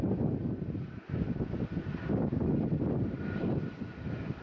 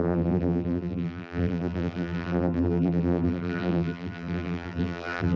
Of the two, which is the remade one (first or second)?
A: second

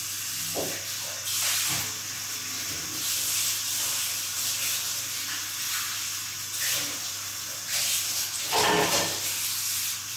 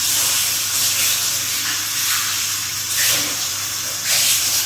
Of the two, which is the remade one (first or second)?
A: second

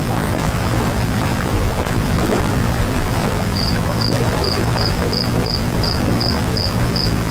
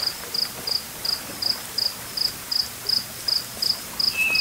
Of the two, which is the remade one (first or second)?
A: first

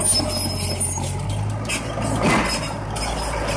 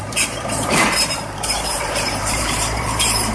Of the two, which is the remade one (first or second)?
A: second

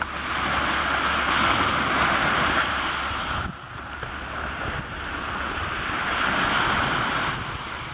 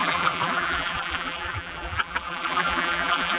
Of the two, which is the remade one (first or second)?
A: second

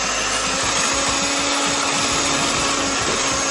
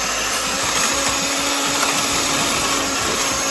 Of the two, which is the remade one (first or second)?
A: second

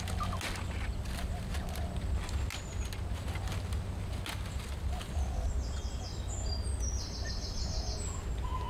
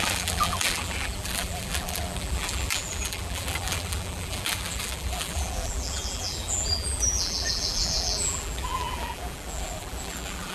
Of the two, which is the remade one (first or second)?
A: second